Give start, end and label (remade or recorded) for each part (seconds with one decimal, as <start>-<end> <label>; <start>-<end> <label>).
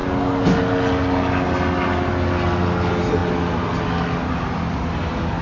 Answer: 0.0-5.4 recorded